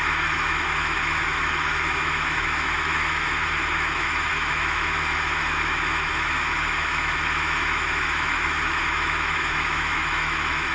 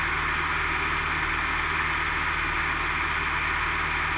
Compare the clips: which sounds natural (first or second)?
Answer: second